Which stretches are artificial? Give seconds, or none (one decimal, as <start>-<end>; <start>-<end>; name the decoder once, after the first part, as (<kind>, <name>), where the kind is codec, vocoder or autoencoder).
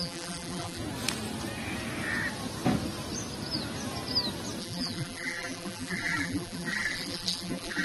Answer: 0.0-0.8 (vocoder, BigVGAN v2); 4.6-7.8